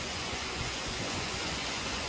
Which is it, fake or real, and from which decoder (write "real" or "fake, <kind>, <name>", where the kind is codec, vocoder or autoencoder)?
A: fake, vocoder, Vocos